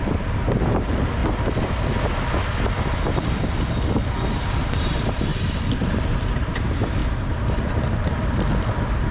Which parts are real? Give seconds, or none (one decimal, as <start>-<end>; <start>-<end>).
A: 1.2-4.1; 5.3-5.8; 7.0-7.5